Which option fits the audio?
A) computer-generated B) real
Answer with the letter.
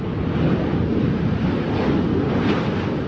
B